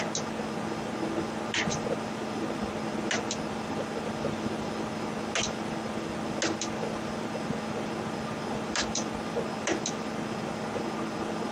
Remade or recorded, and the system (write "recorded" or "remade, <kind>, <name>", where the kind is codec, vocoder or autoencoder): recorded